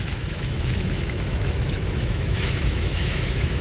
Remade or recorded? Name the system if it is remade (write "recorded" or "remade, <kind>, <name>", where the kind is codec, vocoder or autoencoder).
remade, autoencoder, DAC-VAE